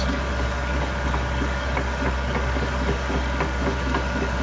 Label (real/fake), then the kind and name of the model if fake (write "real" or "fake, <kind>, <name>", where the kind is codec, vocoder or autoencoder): fake, codec, DAC